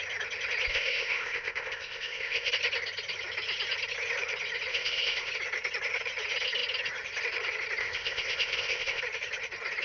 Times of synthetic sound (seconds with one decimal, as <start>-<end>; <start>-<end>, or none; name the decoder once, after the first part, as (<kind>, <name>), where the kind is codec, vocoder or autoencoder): 0.7-2.5 (codec, ZipCodec); 4.7-5.3; 7.8-9.0